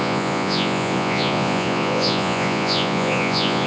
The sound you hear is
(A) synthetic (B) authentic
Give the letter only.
A